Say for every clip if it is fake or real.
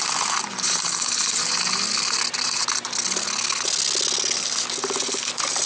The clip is real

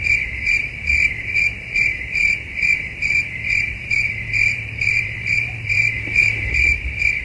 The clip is fake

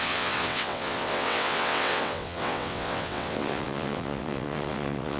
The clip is fake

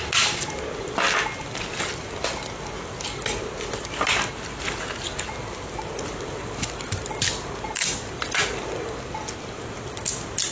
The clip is real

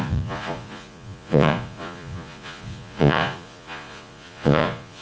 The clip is fake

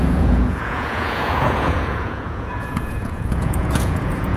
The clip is fake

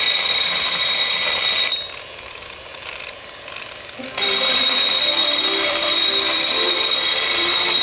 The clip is fake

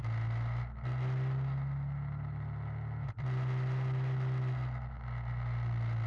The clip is real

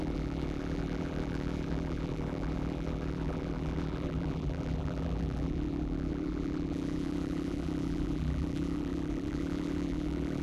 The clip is fake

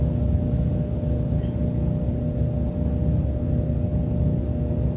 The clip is real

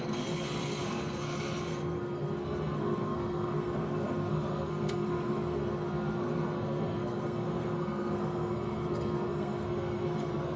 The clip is fake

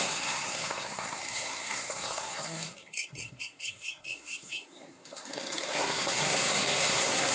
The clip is fake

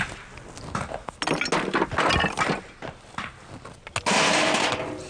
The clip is real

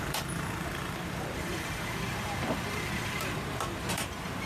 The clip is fake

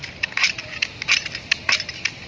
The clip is real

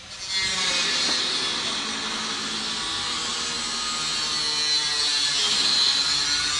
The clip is real